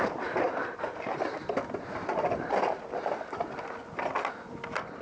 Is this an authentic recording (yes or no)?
yes